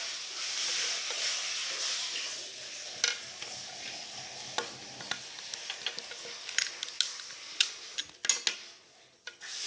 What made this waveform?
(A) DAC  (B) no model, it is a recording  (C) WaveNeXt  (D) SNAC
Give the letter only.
B